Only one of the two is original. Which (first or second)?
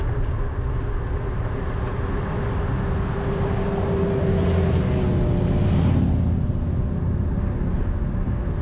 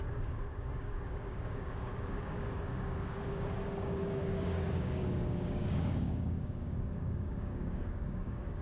first